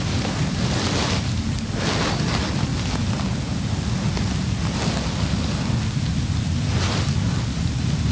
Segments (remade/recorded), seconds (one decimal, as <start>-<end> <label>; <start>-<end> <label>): 0.0-8.1 recorded